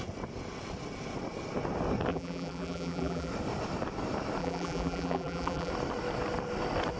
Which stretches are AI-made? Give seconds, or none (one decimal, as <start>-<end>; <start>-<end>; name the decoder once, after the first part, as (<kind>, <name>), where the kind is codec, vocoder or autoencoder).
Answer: 2.1-3.3 (vocoder, BigVGAN v2); 4.4-5.7